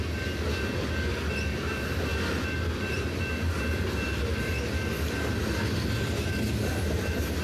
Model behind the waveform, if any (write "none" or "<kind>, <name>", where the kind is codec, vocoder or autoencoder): none